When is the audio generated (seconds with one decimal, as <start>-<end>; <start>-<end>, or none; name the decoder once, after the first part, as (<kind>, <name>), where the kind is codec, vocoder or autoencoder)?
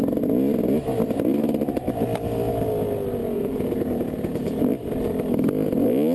3.2-4.6 (vocoder, Vocos)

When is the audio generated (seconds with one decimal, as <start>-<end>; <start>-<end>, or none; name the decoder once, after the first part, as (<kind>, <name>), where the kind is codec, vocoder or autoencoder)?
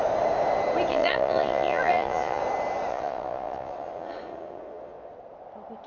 0.9-2.4 (vocoder, Vocos); 2.9-5.1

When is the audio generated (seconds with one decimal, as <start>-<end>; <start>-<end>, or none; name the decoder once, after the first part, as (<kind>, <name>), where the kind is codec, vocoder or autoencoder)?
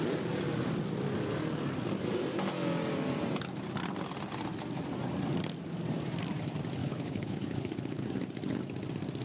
6.8-8.1 (codec, HILCodec)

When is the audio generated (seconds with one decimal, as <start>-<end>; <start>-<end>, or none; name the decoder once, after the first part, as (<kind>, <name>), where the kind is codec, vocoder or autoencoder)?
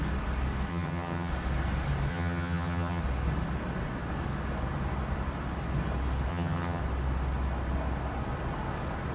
0.7-1.3 (vocoder, HiFi-GAN); 2.1-3.0; 6.3-6.8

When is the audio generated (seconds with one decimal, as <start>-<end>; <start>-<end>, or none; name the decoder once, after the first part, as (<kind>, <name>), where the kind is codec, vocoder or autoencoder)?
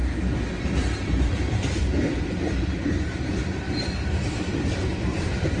0.6-5.6 (vocoder, BigVGAN v2)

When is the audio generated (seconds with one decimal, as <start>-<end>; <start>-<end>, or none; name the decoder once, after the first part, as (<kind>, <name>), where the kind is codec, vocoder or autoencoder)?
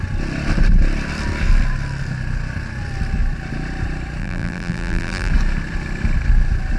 4.2-5.3 (vocoder, BigVGAN v2)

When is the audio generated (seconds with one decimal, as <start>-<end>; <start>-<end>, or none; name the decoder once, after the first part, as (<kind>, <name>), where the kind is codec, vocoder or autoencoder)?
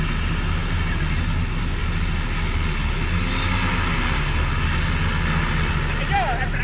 none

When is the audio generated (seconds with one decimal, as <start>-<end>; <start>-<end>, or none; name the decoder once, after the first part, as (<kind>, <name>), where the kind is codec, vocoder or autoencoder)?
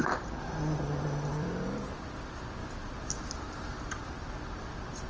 none